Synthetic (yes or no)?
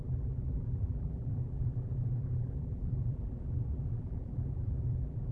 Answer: yes